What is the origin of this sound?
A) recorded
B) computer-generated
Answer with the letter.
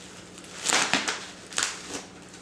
A